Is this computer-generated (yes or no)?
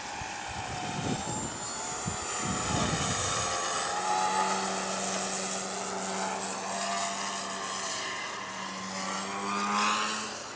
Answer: no